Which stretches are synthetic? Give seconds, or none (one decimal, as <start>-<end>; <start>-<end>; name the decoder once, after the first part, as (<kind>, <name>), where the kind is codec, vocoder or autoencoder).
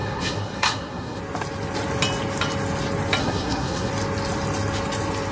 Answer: 0.0-1.2 (codec, SNAC); 3.2-3.9